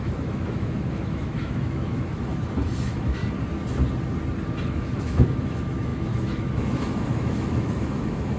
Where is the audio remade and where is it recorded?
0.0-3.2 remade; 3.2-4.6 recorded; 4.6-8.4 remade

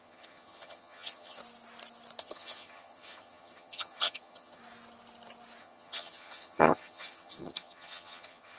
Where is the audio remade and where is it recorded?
0.0-1.4 remade; 1.4-2.2 recorded; 2.2-4.6 remade; 4.6-5.6 recorded; 5.6-8.6 remade

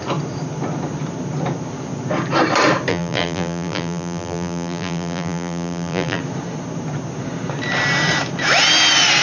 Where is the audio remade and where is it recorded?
0.0-2.9 recorded; 2.9-6.2 remade; 6.2-9.2 recorded

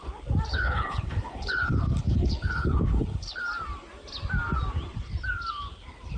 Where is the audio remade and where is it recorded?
0.0-0.5 recorded; 0.5-3.4 remade; 3.4-6.2 recorded

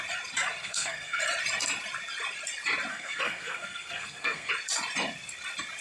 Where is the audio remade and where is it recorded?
0.0-0.6 recorded; 0.6-1.2 remade; 1.2-2.9 recorded; 2.9-4.5 remade; 4.5-5.8 recorded

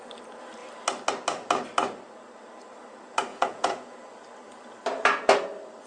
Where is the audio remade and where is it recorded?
0.0-3.3 recorded; 3.3-4.1 remade; 4.1-5.9 recorded

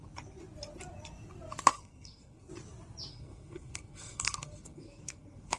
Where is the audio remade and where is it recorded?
0.0-1.7 recorded; 1.7-2.5 remade; 2.5-3.1 recorded; 3.1-5.6 remade